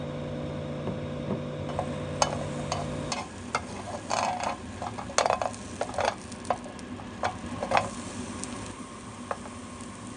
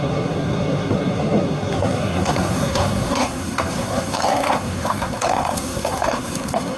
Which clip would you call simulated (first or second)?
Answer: second